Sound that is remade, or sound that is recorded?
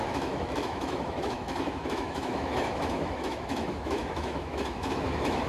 remade